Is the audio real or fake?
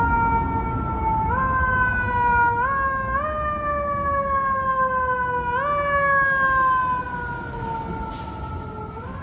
real